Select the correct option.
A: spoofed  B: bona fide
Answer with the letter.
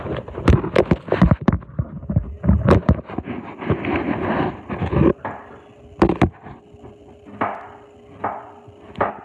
B